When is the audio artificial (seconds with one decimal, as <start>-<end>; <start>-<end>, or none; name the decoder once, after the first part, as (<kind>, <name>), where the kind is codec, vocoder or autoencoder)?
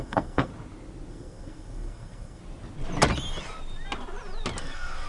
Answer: 0.0-0.5 (codec, SNAC); 1.1-2.4; 4.6-5.1